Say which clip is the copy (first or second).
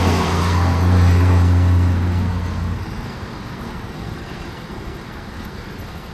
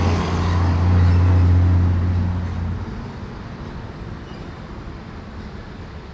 first